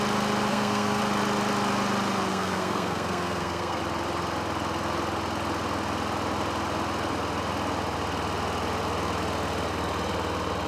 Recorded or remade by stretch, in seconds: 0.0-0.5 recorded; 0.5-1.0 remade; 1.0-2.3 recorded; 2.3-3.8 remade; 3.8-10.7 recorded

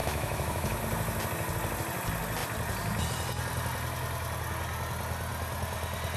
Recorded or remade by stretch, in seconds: 0.0-0.8 remade; 0.8-6.2 recorded